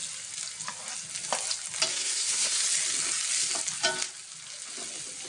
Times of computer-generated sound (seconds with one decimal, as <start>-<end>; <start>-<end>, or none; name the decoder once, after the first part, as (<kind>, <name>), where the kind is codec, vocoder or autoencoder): 1.9-2.6 (codec, SNAC)